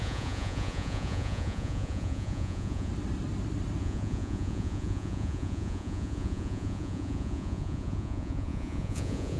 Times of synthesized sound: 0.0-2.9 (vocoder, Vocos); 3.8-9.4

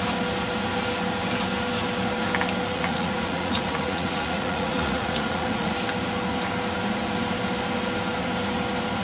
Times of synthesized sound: 2.7-5.7 (vocoder, Vocos)

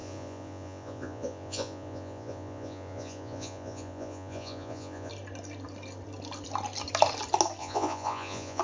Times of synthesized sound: 0.0-5.1 (vocoder, Vocos); 7.6-8.6